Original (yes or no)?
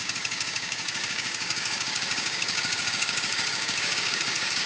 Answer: no